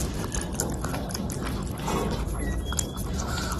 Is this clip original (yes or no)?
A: yes